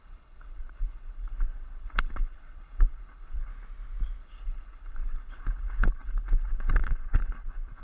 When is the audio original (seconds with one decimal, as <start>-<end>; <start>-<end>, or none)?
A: 3.5-4.2